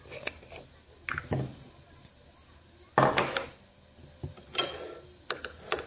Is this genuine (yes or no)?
yes